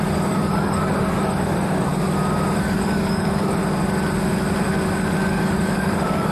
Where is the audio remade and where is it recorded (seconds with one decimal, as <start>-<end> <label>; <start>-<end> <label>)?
0.0-1.9 remade; 1.9-2.6 recorded; 2.6-3.6 remade; 3.6-5.2 recorded; 5.2-6.3 remade